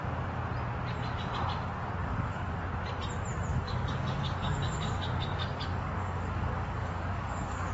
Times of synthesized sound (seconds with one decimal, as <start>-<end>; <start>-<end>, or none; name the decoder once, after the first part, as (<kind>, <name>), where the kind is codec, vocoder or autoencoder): 2.0-2.6 (codec, DAC); 3.5-7.7